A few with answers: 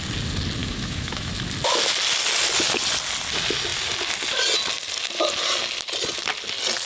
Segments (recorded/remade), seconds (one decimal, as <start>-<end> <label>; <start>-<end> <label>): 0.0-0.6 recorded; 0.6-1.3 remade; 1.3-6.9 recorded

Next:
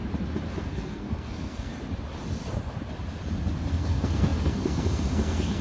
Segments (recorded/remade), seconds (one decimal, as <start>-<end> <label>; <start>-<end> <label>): 0.0-0.6 recorded; 0.6-1.7 remade; 1.7-3.7 recorded; 3.7-5.6 remade

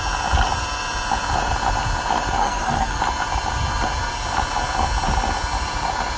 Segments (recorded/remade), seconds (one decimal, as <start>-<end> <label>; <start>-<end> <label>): 0.0-2.4 recorded; 2.4-3.0 remade; 3.0-6.2 recorded